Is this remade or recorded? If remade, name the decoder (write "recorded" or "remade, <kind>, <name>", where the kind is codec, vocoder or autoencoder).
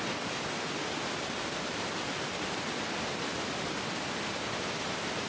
remade, vocoder, BigVGAN v2